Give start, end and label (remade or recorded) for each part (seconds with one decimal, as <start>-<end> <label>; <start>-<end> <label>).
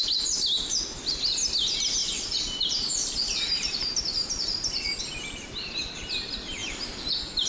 0.0-2.0 recorded; 2.0-5.0 remade; 5.0-7.5 recorded